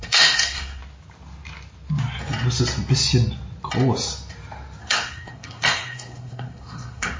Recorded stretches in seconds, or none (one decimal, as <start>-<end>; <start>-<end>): 0.8-4.8